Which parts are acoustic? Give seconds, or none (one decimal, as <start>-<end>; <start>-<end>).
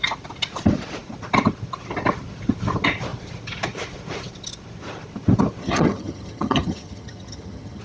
0.0-5.6